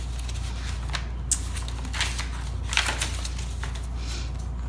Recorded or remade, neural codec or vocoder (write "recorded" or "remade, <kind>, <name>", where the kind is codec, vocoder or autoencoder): recorded